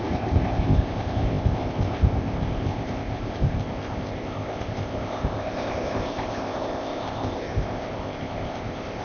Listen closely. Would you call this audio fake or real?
fake